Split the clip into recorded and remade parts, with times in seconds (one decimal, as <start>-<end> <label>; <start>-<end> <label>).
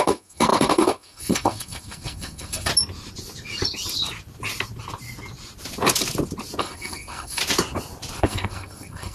0.0-2.7 remade; 2.7-6.6 recorded; 6.6-7.4 remade; 7.4-8.2 recorded; 8.2-9.1 remade